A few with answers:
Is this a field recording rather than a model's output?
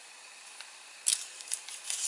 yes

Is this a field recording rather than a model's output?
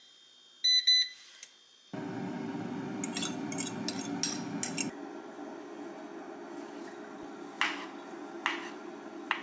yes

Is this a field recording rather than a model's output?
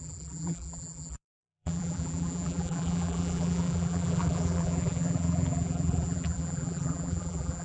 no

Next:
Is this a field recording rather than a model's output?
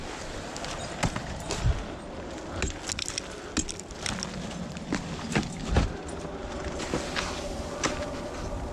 yes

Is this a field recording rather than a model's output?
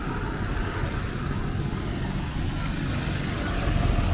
yes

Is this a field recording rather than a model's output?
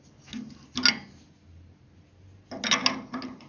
yes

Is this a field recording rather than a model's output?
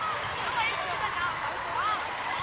yes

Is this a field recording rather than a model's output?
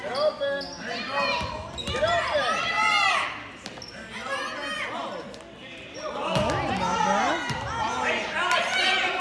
yes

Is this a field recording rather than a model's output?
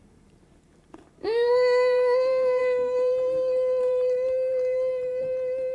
no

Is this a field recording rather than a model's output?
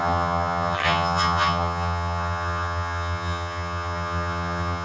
no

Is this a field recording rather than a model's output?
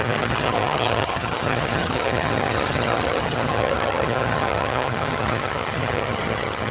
no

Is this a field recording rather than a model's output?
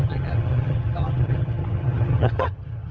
no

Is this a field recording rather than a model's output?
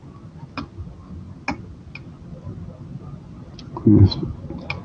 yes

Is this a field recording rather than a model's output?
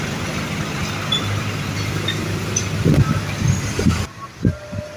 no